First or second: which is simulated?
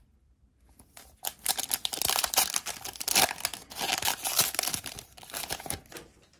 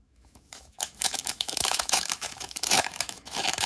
second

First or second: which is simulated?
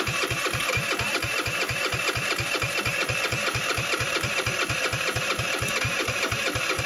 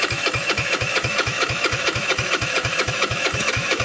second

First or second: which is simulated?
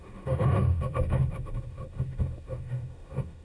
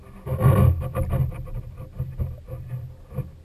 first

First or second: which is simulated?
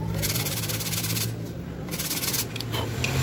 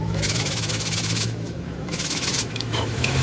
second